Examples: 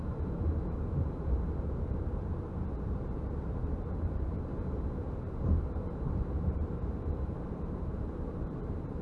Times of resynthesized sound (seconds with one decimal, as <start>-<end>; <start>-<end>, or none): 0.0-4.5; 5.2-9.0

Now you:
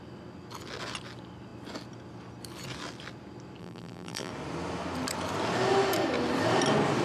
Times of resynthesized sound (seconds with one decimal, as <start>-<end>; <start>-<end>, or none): 3.6-4.3

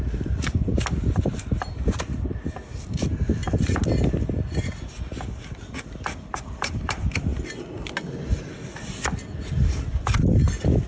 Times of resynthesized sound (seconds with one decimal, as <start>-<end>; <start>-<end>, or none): none